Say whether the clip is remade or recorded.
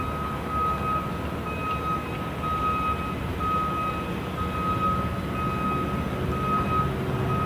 recorded